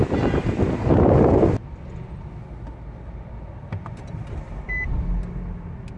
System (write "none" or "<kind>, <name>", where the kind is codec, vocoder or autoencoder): none